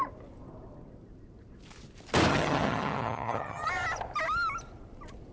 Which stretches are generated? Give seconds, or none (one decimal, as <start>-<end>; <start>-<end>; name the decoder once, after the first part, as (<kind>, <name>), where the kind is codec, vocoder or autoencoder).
2.3-3.7 (vocoder, HiFi-GAN)